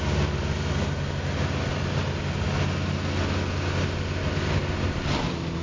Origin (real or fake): real